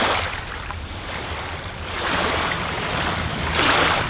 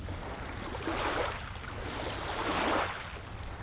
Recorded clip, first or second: second